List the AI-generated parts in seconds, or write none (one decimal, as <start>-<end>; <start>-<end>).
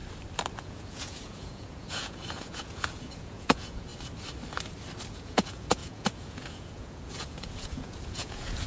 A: 0.5-3.9; 5.1-8.7